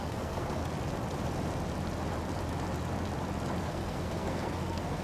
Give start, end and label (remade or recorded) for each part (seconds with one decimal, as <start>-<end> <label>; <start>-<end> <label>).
0.0-0.6 remade; 0.6-3.6 recorded; 3.6-5.0 remade